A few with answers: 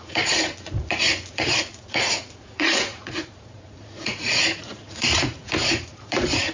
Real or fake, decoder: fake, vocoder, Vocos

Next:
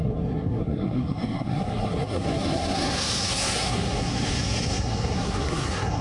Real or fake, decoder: fake, codec, SNAC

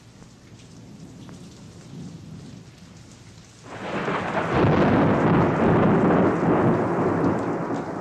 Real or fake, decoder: real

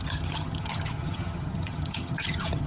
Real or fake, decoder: fake, vocoder, HiFi-GAN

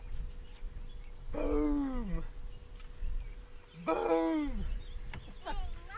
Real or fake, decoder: real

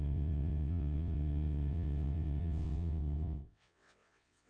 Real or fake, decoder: fake, vocoder, WaveNeXt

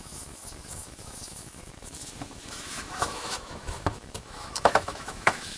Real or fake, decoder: fake, autoencoder, DAC-VAE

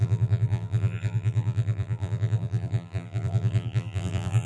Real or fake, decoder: fake, vocoder, BigVGAN v2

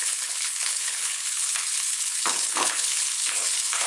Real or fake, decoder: fake, codec, HILCodec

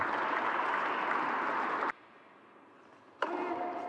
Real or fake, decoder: real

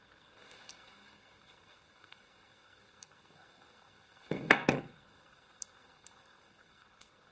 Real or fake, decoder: fake, codec, SNAC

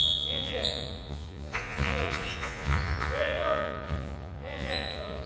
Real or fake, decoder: fake, vocoder, Vocos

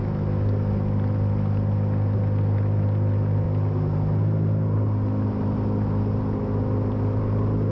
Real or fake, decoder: real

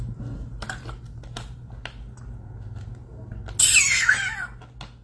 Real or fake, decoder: real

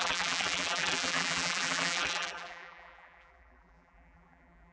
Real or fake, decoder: fake, vocoder, BigVGAN v2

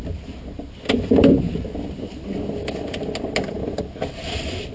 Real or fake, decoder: real